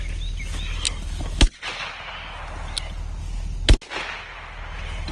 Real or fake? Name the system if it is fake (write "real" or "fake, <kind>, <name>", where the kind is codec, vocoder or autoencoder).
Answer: real